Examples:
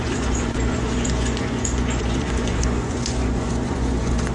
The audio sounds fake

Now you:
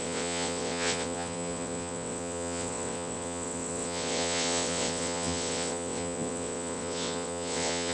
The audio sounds fake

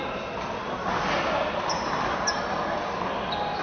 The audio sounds real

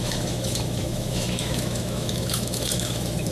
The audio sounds fake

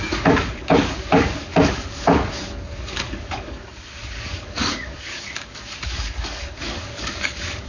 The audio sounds fake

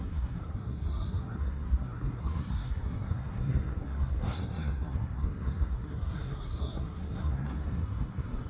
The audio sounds fake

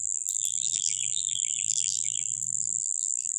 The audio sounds fake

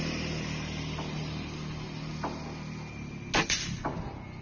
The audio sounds real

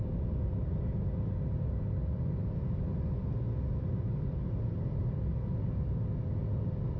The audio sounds real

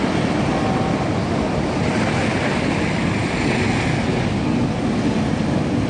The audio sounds real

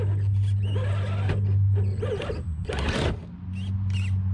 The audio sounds real